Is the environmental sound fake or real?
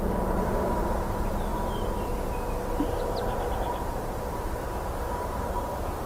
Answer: real